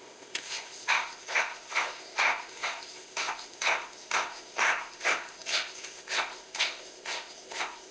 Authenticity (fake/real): fake